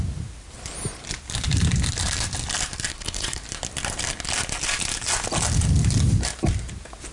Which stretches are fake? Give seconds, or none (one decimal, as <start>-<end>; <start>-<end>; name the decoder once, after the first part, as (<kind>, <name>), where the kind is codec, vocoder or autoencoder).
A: 2.9-3.4 (codec, HILCodec)